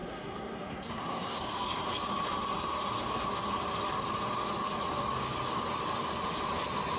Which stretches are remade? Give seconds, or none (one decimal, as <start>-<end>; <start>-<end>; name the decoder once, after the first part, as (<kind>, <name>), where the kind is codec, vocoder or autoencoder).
0.0-1.4 (codec, SNAC)